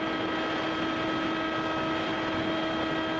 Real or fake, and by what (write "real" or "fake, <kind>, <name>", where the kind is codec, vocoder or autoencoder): real